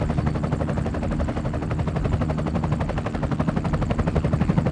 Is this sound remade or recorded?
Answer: recorded